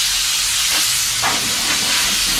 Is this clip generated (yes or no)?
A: no